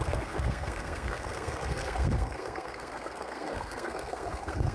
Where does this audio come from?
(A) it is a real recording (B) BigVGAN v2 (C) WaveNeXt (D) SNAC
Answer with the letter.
D